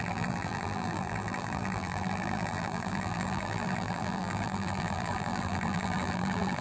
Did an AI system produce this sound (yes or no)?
yes